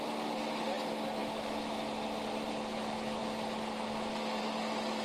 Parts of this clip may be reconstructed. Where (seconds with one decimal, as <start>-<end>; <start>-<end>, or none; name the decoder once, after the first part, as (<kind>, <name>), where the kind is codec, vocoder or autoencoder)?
none